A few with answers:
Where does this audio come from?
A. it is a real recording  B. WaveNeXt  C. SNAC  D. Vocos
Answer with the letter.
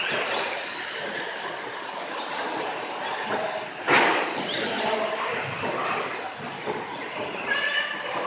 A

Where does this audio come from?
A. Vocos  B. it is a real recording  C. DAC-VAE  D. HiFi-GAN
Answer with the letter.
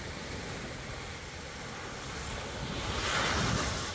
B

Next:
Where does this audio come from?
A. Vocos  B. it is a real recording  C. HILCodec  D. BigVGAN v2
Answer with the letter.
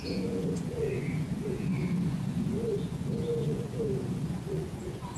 A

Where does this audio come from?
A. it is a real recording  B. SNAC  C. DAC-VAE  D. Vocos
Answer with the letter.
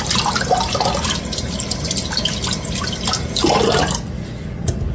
A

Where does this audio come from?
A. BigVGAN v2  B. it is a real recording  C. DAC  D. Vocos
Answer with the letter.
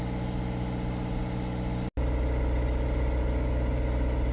B